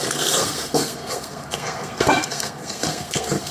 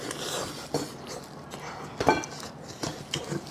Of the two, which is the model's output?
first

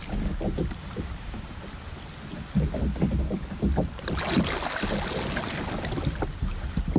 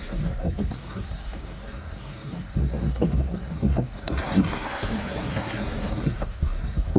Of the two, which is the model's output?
second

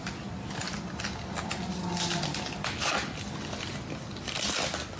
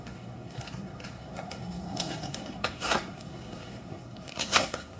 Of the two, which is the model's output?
second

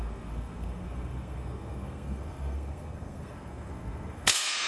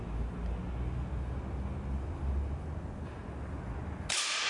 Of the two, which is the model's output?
first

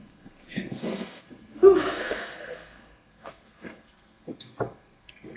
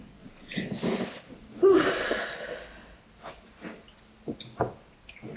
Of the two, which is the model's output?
first